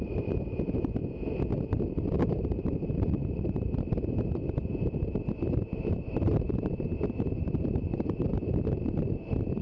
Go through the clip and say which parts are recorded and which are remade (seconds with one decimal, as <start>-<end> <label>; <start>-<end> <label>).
0.0-1.0 remade; 1.0-1.7 recorded; 1.7-9.6 remade